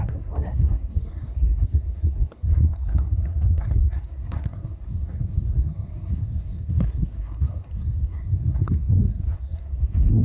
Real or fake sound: fake